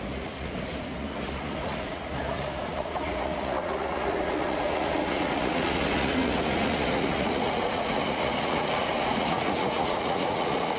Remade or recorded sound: remade